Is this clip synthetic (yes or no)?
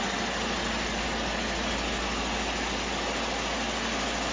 no